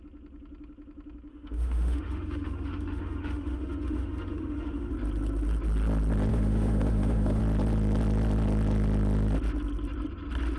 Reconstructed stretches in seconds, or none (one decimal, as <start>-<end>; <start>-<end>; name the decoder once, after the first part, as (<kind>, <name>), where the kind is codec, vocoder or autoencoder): 1.3-4.9 (autoencoder, DAC-VAE); 6.3-7.4